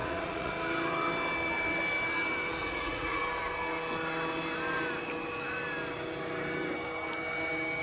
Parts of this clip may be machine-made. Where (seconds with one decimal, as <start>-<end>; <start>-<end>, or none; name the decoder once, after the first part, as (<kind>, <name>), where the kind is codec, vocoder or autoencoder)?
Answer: 0.0-0.5 (vocoder, Vocos); 2.6-3.2